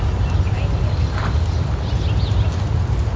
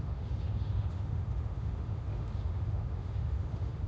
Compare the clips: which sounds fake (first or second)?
second